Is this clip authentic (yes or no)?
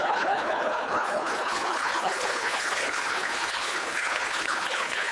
no